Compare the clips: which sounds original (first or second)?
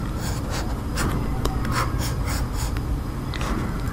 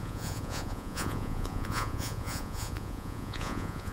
first